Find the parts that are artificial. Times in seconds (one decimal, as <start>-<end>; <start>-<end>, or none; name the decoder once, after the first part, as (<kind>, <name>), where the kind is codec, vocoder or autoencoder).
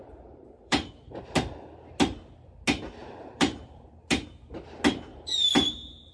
0.0-1.1 (vocoder, BigVGAN v2); 3.0-3.9; 5.1-6.1